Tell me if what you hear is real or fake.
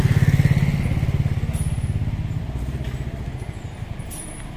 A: real